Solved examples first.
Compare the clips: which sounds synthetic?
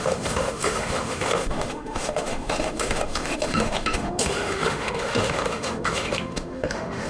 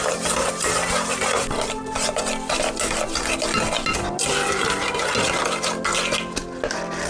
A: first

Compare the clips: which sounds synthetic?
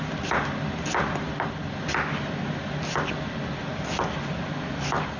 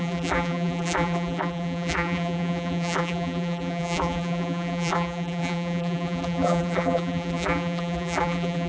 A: second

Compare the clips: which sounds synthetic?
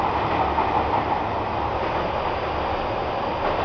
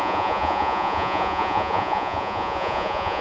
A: second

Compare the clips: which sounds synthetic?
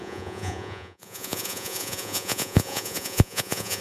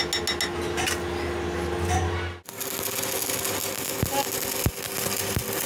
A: first